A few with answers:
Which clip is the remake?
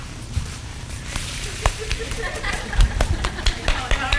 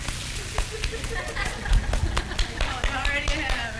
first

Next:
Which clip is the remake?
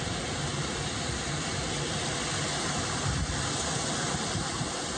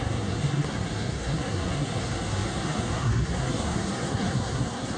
second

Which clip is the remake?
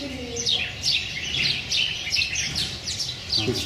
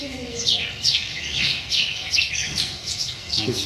second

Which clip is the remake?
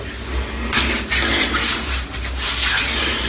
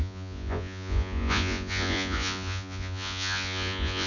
second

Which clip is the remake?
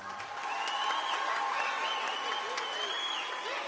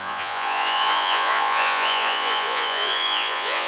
second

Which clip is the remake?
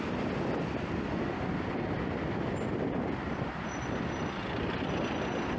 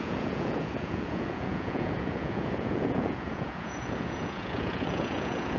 second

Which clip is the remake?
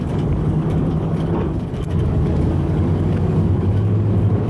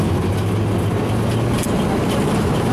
first